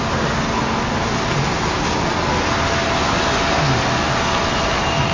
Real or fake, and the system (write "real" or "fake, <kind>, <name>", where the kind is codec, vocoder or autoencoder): real